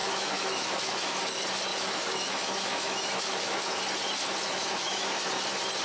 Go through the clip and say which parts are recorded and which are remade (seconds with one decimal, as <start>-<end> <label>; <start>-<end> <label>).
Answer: 0.0-1.2 remade; 1.2-1.7 recorded; 1.7-3.8 remade; 3.8-4.4 recorded; 4.4-5.3 remade; 5.3-5.8 recorded